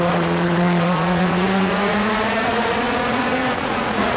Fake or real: fake